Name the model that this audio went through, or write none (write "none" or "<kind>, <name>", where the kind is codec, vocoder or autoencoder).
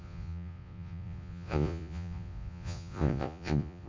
vocoder, Vocos